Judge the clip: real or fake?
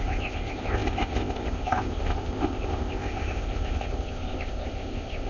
fake